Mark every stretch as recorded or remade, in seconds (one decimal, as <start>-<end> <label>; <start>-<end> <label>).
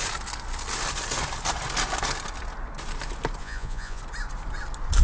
0.0-3.4 recorded; 3.4-4.0 remade; 4.0-5.0 recorded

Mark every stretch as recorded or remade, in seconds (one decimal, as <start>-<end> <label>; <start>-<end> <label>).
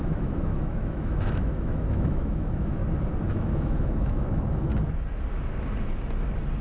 0.0-2.8 remade; 2.8-3.3 recorded; 3.3-4.7 remade; 4.7-6.6 recorded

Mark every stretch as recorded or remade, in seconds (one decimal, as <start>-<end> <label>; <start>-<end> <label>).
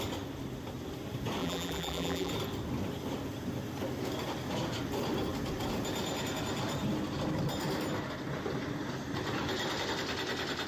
0.0-1.4 recorded; 1.4-2.3 remade; 2.3-10.7 recorded